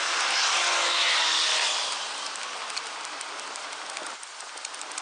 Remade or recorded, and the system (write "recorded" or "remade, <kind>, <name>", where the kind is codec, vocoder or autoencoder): recorded